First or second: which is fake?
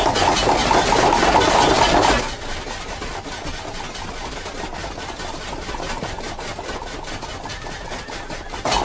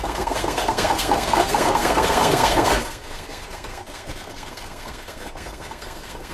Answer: second